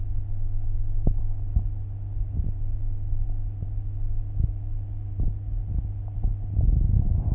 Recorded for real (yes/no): yes